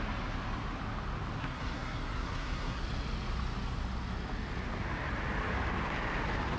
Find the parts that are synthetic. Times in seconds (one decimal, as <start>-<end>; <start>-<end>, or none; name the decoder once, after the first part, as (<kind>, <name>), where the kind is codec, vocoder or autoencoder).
1.4-2.8 (codec, SNAC)